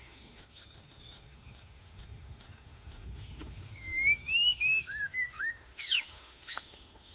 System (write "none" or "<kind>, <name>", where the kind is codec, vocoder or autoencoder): autoencoder, DAC-VAE